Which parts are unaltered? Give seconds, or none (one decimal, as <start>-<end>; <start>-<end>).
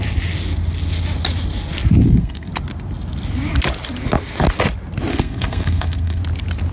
0.0-2.0; 2.5-5.1; 6.2-6.7